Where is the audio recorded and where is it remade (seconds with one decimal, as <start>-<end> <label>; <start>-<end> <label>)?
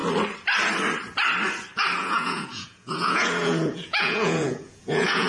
0.0-2.0 recorded; 2.0-5.3 remade